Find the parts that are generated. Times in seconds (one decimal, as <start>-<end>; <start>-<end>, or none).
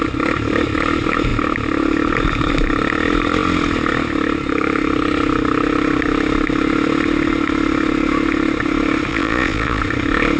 9.1-9.8